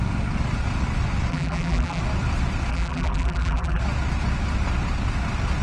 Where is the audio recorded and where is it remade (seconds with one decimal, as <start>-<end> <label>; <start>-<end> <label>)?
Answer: 0.0-1.3 recorded; 1.3-2.0 remade; 2.0-2.7 recorded; 2.7-3.8 remade; 3.8-5.6 recorded